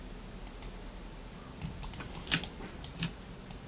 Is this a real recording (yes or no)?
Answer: yes